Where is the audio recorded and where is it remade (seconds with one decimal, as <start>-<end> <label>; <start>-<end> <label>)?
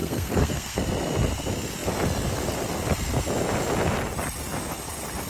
0.0-0.8 remade; 0.8-5.3 recorded